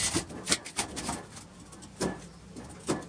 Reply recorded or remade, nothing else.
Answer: recorded